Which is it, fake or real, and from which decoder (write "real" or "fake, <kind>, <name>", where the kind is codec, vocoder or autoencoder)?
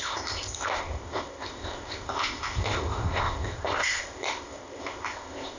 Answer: fake, codec, ZipCodec